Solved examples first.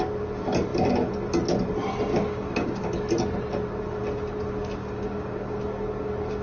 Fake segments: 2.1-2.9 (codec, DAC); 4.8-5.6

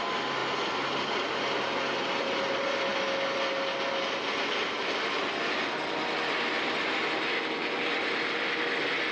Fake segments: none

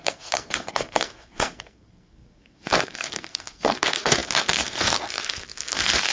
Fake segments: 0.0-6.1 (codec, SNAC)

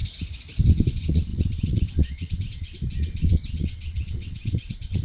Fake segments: 0.7-5.0 (vocoder, WaveNeXt)

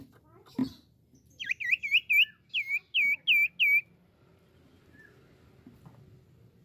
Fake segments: none